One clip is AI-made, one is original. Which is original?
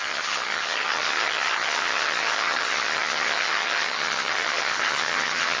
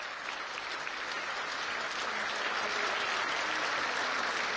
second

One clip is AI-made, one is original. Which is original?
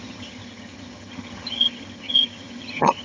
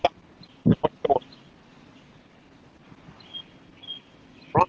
second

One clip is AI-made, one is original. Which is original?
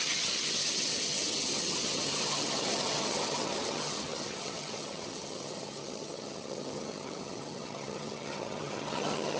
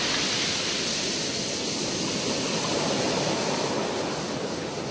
second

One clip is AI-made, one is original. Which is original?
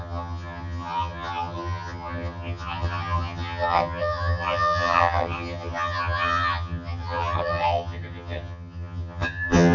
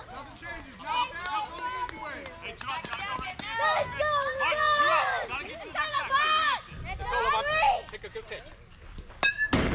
second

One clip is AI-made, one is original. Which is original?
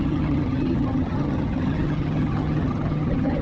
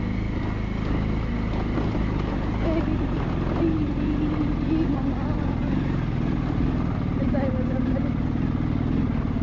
second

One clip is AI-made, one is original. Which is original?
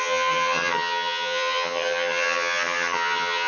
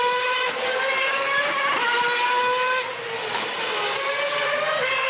second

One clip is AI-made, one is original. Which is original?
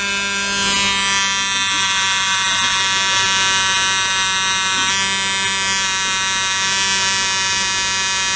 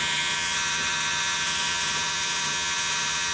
first